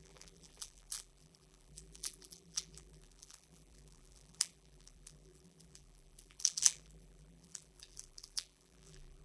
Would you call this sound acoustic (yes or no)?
no